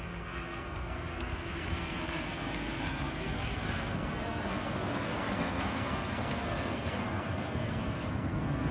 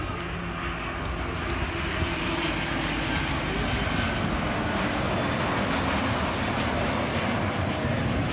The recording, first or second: second